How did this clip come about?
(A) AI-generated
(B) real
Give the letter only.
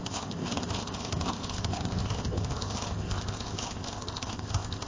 A